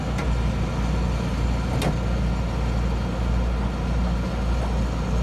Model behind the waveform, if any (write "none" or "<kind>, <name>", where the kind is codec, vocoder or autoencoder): none